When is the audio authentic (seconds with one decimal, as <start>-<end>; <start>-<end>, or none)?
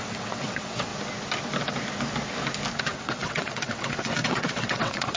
0.9-2.8